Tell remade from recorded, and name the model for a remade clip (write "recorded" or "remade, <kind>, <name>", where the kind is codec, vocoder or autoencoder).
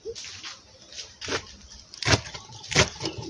recorded